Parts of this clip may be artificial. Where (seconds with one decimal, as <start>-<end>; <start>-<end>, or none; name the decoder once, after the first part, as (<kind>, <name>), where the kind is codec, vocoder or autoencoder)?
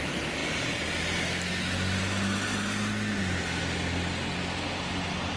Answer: none